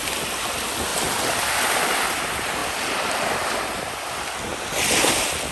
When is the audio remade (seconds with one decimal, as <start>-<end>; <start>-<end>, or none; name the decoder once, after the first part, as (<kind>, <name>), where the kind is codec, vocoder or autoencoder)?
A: none